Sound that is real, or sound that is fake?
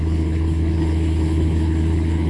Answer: fake